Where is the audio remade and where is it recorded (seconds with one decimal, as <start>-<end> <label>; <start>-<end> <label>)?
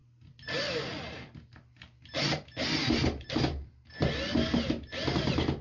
0.0-5.6 recorded